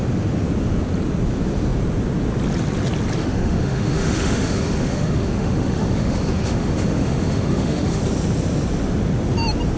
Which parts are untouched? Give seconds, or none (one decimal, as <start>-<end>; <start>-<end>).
0.0-3.2; 8.0-9.8